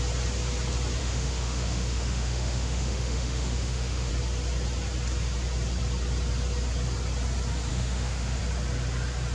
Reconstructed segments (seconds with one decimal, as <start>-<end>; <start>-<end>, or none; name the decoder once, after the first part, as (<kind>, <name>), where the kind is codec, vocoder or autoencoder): 1.0-4.1 (autoencoder, DAC-VAE); 7.7-8.4